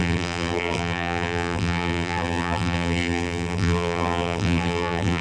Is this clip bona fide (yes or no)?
no